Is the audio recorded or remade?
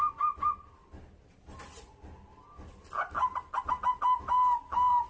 recorded